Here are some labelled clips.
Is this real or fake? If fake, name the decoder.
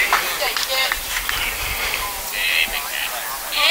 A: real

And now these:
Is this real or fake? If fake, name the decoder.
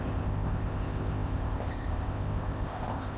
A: fake, codec, ZipCodec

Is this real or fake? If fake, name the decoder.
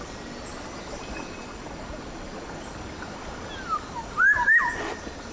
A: fake, vocoder, BigVGAN v2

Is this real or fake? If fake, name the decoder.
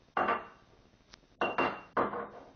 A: real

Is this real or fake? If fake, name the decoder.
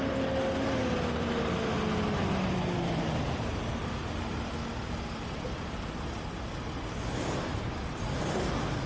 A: real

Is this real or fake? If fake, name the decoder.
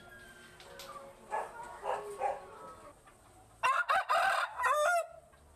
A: real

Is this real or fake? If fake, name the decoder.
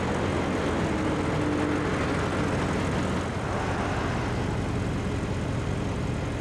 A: real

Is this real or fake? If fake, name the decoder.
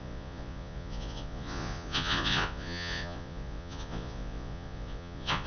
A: fake, vocoder, Vocos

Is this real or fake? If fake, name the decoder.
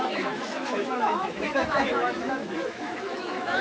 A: fake, autoencoder, DAC-VAE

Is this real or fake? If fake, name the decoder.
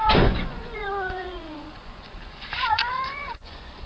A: fake, vocoder, Vocos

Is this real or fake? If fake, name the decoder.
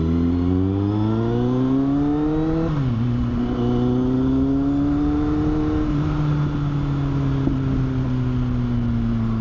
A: real